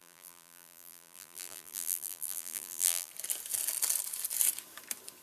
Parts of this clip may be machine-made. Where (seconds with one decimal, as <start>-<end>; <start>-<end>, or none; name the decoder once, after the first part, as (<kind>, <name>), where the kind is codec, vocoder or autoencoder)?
0.0-3.1 (vocoder, BigVGAN v2)